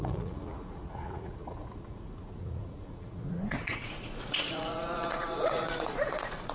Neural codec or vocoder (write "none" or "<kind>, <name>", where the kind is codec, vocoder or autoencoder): vocoder, Vocos